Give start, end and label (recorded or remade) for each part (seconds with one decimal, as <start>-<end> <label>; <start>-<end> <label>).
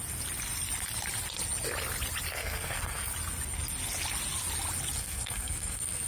0.0-2.3 recorded; 2.3-3.1 remade; 3.1-5.0 recorded; 5.0-6.1 remade